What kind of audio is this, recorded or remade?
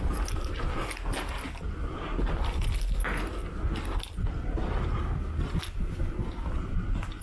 recorded